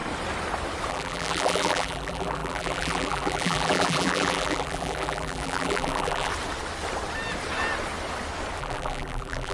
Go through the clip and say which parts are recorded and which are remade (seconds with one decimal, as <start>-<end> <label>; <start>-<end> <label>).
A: 0.0-0.9 recorded; 0.9-6.3 remade; 6.3-8.6 recorded; 8.6-9.5 remade